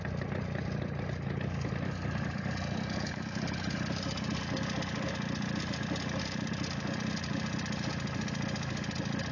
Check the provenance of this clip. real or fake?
real